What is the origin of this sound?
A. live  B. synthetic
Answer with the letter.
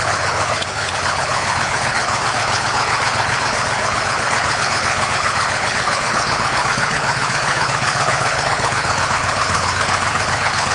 B